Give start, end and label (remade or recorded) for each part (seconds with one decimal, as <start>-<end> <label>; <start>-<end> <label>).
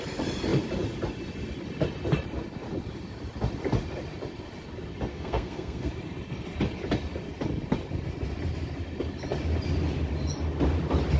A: 0.0-5.1 recorded; 5.1-5.9 remade; 5.9-11.2 recorded